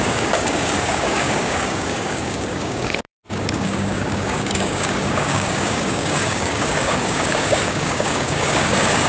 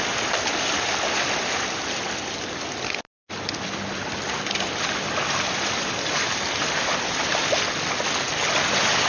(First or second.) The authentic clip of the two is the second